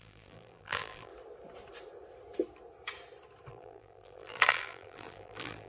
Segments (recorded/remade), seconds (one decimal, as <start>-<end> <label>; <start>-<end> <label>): 0.0-1.1 remade; 1.1-3.5 recorded; 3.5-5.7 remade